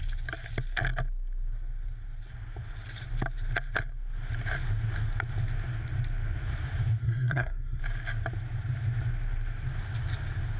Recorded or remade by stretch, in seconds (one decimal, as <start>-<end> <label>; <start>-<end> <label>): 0.0-7.0 recorded; 7.0-7.8 remade; 7.8-10.6 recorded